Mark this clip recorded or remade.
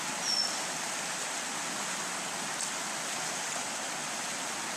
recorded